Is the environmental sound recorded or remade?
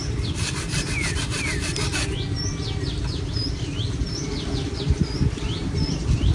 recorded